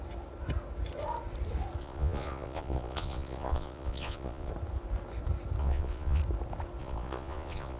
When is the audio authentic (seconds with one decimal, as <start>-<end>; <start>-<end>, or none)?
0.0-1.8; 4.5-5.6; 6.2-6.8